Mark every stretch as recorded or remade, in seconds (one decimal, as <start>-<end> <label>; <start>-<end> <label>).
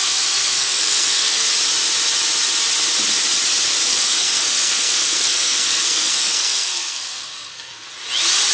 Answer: 0.0-1.5 remade; 1.5-3.9 recorded; 3.9-7.9 remade; 7.9-8.5 recorded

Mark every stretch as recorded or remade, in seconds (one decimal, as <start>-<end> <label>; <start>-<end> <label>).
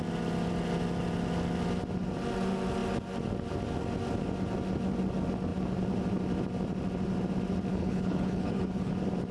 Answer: 0.0-7.7 recorded; 7.7-8.9 remade; 8.9-9.3 recorded